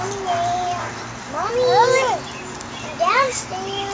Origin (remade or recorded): recorded